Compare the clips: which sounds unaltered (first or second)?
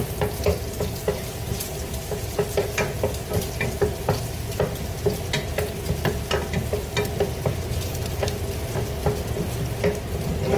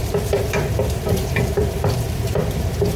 first